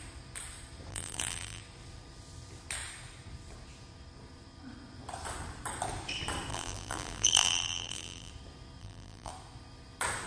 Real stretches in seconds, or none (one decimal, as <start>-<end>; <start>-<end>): 0.0-0.9; 1.6-6.5; 8.3-8.8; 9.3-10.3